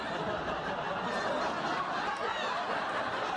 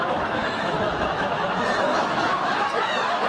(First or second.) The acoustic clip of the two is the first